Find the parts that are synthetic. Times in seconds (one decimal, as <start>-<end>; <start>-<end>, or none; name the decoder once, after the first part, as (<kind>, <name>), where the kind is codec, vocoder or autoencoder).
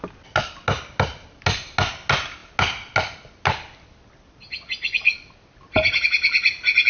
none